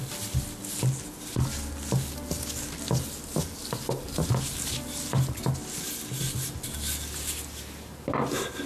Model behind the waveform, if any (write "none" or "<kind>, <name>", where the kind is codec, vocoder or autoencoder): none